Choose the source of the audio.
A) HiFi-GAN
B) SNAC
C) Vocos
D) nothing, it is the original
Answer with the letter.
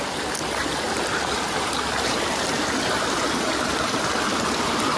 D